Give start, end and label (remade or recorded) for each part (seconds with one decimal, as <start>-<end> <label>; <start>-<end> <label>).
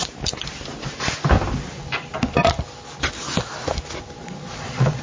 0.0-4.2 recorded; 4.2-5.0 remade